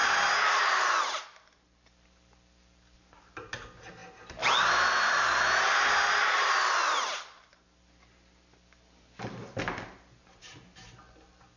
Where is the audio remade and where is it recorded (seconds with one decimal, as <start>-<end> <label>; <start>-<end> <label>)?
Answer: 0.0-11.6 recorded